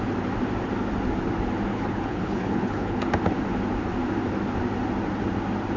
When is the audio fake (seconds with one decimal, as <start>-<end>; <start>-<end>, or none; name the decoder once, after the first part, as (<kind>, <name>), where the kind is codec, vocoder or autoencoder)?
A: 1.7-3.1 (codec, HILCodec)